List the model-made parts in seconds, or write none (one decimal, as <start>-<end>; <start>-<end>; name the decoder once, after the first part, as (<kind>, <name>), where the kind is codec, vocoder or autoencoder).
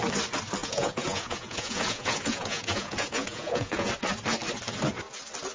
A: 0.6-3.9 (vocoder, Vocos)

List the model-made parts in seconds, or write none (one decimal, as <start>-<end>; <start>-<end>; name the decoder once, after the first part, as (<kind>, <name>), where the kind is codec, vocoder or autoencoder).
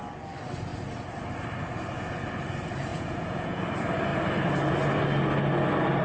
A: 2.9-3.6 (vocoder, Vocos)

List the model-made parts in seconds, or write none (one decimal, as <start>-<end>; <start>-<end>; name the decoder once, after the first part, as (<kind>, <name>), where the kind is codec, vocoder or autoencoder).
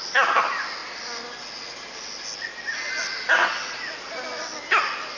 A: none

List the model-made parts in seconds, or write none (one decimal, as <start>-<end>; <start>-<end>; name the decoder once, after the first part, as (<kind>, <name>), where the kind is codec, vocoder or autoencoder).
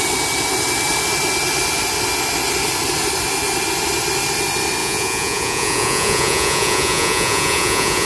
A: 4.8-8.1 (vocoder, Vocos)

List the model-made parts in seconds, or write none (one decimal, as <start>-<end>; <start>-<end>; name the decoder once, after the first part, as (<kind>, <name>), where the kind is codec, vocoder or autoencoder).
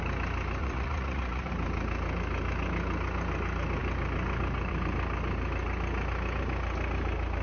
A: 0.6-1.5 (vocoder, Vocos)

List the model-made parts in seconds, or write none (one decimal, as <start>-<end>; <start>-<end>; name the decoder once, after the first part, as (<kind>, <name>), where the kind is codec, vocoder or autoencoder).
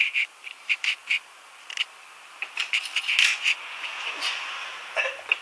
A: 1.0-1.5 (vocoder, Vocos); 3.3-4.5